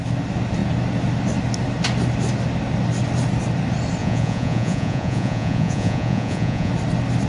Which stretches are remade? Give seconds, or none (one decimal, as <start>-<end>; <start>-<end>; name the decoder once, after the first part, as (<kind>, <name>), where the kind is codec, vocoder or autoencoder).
4.0-6.7 (vocoder, Vocos)